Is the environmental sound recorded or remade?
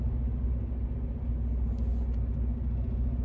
recorded